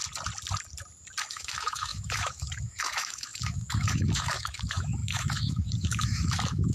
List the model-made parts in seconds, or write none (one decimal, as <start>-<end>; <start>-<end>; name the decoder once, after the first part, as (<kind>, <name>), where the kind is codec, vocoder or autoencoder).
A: 1.2-6.7 (autoencoder, DAC-VAE)